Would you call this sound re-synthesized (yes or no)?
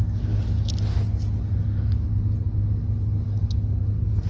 no